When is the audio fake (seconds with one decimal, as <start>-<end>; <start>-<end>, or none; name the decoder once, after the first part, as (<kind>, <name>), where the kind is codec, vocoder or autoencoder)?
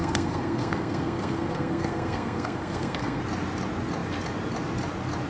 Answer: 0.0-3.2 (codec, SNAC)